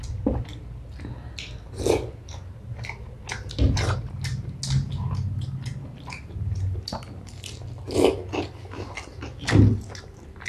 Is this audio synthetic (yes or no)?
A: no